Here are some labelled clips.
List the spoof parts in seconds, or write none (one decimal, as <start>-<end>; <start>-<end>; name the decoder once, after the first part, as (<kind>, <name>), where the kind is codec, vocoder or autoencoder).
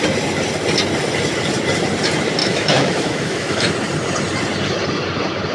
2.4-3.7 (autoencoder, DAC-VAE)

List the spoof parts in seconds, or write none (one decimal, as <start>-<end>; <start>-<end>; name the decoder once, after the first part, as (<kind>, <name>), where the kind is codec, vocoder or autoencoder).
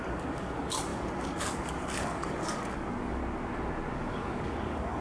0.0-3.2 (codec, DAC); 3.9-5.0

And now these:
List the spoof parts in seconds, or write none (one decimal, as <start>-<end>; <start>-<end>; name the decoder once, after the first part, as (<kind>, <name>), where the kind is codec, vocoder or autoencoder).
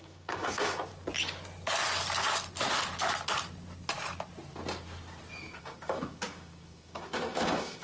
0.0-0.9 (codec, DAC); 5.6-7.8